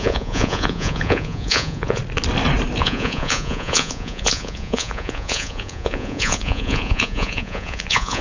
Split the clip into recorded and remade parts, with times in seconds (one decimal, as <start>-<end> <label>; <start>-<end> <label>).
0.0-2.0 remade; 2.0-2.8 recorded; 2.8-8.2 remade